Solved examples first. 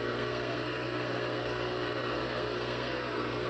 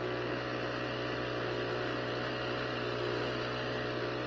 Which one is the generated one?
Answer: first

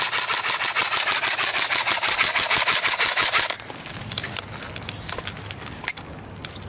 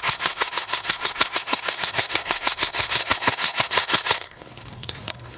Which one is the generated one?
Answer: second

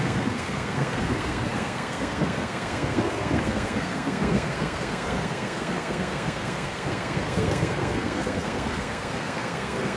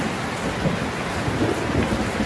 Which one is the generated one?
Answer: first